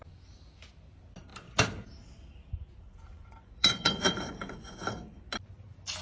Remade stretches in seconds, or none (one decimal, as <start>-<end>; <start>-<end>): 3.1-4.8